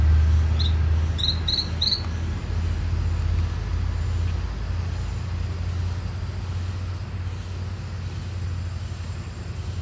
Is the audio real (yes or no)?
yes